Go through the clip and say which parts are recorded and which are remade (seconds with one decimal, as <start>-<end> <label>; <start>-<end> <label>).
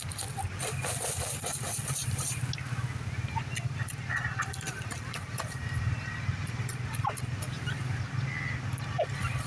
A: 0.0-9.5 recorded